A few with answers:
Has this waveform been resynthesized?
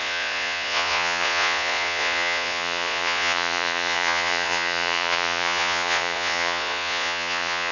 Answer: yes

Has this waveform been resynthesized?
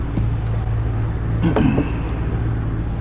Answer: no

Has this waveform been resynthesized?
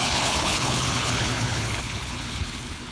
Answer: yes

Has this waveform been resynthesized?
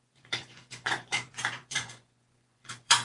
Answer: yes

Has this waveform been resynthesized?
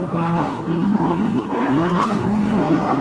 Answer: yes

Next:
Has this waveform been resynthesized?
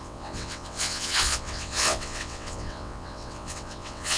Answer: yes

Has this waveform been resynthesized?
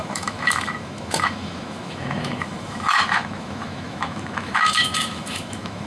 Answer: yes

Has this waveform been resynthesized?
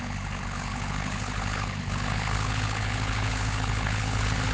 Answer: yes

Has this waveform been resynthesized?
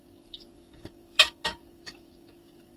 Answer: yes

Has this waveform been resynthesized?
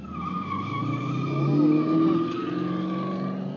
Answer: no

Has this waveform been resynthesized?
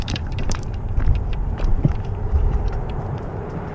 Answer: yes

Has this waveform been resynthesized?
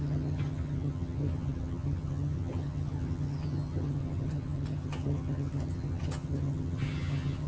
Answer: yes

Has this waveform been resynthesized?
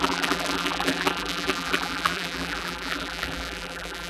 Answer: yes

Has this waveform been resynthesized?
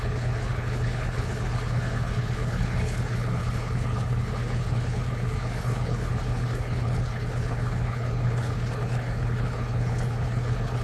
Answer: yes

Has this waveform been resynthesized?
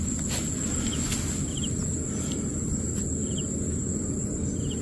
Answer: no